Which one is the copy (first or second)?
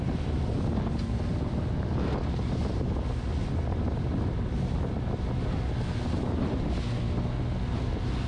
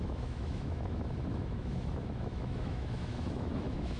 second